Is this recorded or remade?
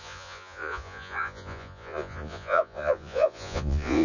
remade